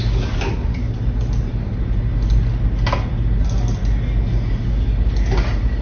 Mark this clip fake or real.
real